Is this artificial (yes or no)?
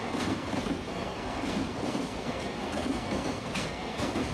yes